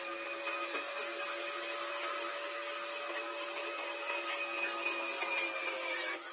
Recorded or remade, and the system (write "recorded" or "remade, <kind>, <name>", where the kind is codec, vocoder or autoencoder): recorded